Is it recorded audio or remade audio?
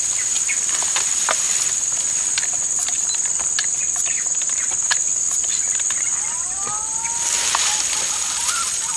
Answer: recorded